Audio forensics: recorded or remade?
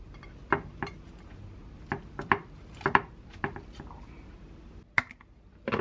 recorded